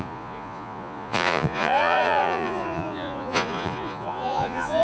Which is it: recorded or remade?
remade